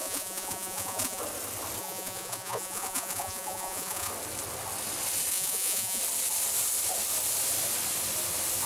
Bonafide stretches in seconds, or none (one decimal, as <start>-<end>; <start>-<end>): 1.2-1.8; 4.1-5.3; 6.0-8.7